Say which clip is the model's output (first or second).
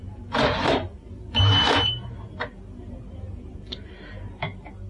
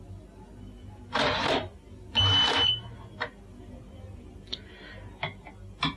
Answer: first